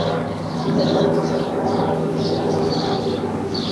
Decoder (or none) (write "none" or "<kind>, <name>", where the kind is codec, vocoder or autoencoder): codec, DAC